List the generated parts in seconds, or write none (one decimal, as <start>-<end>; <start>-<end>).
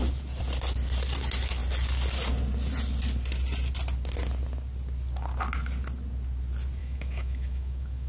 6.8-8.1